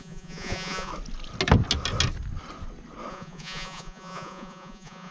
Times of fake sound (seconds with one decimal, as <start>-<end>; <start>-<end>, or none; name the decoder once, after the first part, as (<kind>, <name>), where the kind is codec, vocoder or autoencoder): 0.0-0.9 (vocoder, Vocos); 3.1-5.1